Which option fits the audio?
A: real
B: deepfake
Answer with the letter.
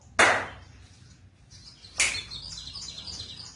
A